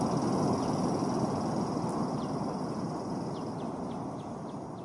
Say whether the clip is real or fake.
real